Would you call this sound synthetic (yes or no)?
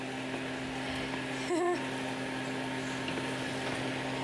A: no